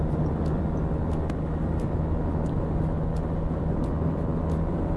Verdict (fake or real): real